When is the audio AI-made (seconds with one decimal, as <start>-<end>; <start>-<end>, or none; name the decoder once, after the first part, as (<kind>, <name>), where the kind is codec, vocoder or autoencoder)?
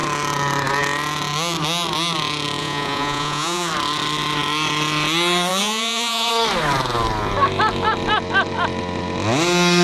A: 2.6-3.7 (vocoder, Vocos); 5.5-6.3